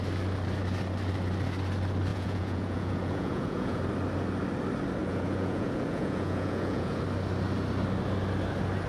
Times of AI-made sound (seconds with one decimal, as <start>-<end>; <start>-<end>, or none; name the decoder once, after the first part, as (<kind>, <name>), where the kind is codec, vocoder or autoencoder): 2.1-3.8 (vocoder, Vocos); 5.0-7.0